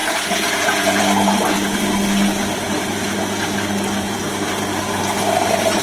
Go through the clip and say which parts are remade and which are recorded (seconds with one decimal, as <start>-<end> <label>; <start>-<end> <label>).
0.0-1.0 remade; 1.0-5.8 recorded